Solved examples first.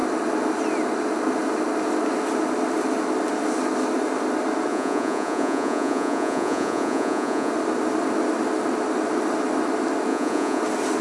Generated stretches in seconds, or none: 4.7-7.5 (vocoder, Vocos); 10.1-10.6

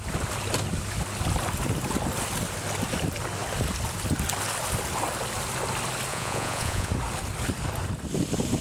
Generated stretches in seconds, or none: 6.1-6.9 (vocoder, Vocos)

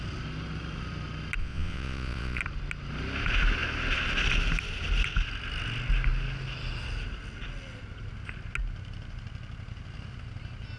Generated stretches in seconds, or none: 1.4-2.4 (vocoder, Vocos)

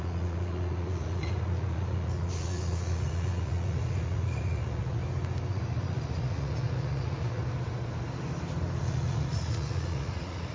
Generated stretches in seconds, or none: 0.0-5.0 (vocoder, Vocos); 5.5-7.4; 8.8-10.5